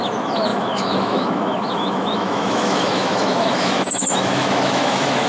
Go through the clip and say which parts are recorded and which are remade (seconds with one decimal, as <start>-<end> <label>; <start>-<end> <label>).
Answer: 0.0-5.3 remade